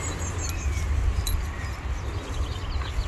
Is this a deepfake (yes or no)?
no